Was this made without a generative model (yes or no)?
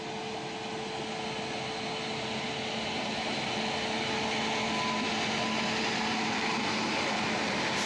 yes